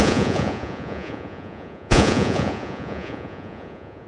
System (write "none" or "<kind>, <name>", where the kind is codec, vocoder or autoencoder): vocoder, Vocos